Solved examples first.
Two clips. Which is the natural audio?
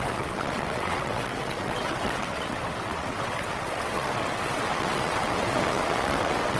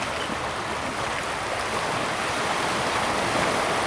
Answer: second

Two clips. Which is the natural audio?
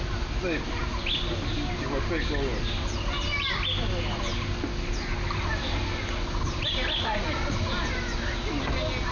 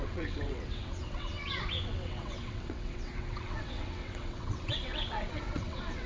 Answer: first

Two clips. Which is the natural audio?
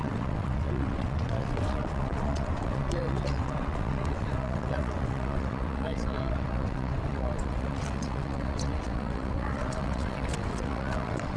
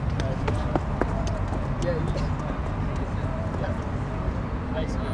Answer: second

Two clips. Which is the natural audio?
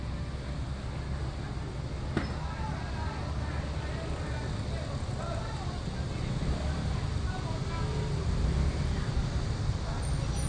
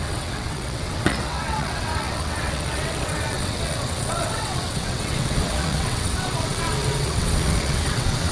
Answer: first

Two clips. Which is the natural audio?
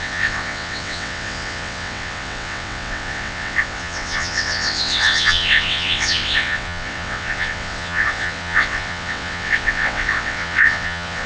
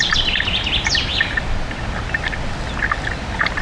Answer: second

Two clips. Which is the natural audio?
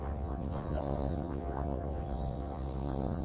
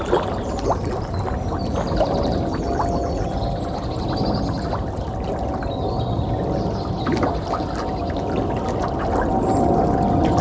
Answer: second